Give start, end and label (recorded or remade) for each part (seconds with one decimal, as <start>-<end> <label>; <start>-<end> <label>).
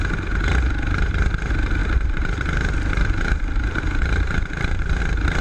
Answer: 0.0-1.8 recorded; 1.8-5.0 remade; 5.0-5.4 recorded